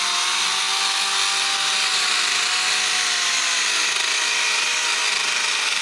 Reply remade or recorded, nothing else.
recorded